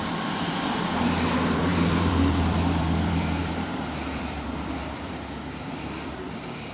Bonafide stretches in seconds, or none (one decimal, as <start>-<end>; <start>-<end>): none